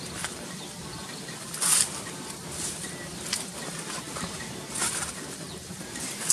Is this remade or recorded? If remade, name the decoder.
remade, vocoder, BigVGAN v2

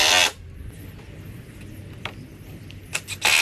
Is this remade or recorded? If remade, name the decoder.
recorded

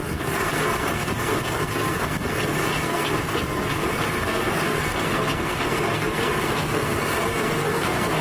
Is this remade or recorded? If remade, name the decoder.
remade, codec, SNAC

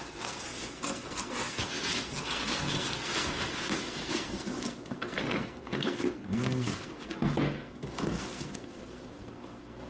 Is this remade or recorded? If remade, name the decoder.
remade, codec, SNAC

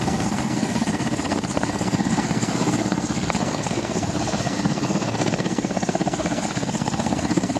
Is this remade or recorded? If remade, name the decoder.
remade, codec, SNAC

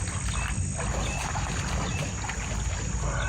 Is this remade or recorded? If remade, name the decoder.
recorded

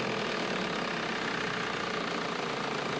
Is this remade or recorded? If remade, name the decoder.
recorded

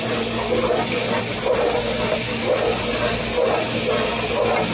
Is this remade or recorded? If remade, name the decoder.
recorded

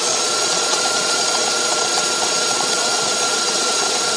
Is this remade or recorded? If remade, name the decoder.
remade, vocoder, Vocos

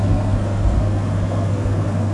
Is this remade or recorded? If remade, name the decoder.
remade, codec, SNAC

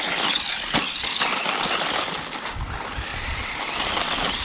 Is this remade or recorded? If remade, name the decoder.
recorded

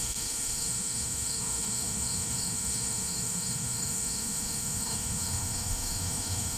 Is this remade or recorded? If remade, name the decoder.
remade, autoencoder, DAC-VAE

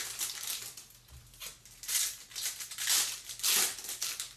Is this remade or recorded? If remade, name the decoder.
recorded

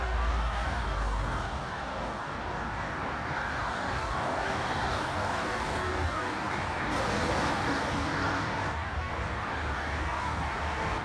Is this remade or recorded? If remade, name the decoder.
remade, codec, DAC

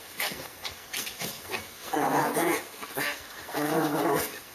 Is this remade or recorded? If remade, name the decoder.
remade, codec, SNAC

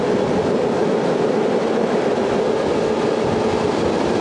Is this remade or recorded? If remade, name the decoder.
recorded